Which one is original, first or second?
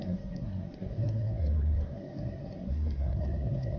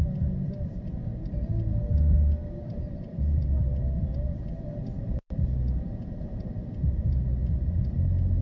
second